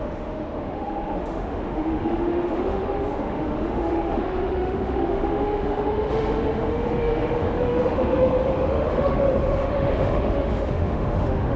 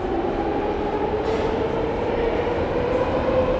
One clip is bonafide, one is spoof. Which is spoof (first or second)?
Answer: first